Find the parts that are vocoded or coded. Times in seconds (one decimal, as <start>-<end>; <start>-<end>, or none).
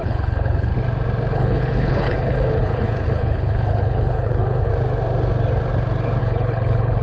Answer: 0.0-0.7; 1.3-4.7; 6.2-7.0